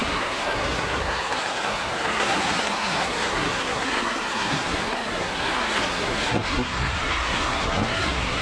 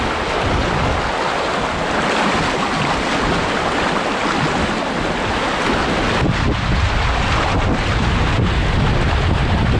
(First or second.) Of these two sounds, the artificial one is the first